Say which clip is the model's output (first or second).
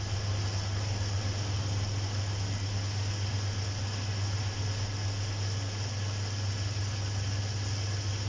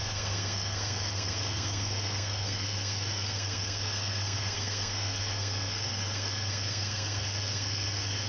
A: second